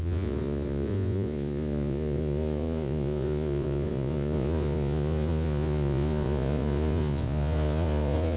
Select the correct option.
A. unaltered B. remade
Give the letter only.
B